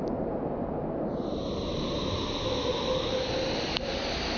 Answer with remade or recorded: recorded